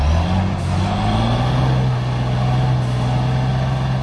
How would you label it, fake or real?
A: real